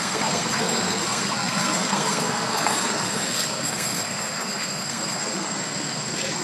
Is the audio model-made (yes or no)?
yes